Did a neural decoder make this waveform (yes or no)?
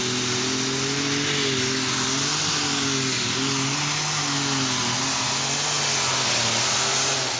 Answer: no